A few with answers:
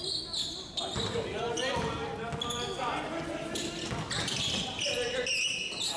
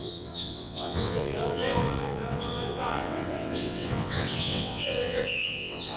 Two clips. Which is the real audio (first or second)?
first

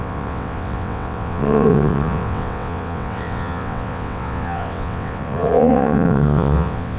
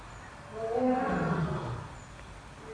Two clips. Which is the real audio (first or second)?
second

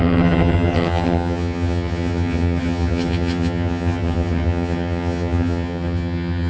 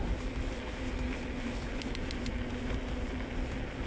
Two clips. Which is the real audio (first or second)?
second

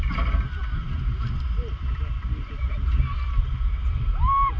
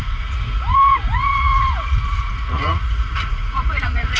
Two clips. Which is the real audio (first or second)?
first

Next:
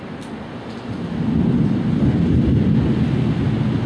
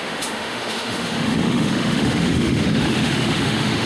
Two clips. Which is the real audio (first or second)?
first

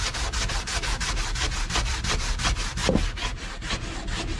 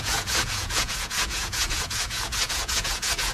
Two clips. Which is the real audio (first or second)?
first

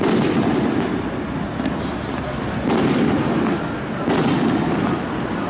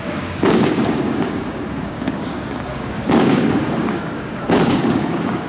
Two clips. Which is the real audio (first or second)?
first